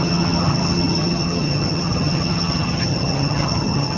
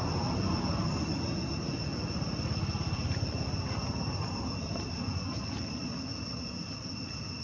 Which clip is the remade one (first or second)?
first